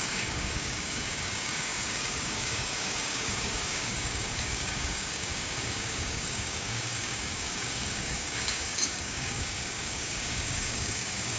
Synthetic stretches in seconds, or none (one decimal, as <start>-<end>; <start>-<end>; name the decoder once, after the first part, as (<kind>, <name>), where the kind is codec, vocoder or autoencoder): 0.0-11.4 (codec, DAC)